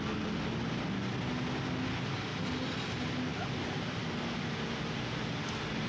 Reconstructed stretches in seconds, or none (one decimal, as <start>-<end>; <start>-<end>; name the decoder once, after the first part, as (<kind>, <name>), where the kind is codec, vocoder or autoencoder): none